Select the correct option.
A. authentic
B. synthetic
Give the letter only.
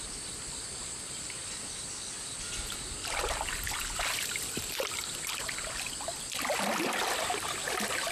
A